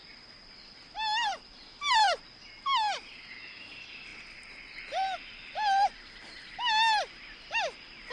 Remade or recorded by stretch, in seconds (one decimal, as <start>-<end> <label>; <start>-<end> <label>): 0.0-8.1 recorded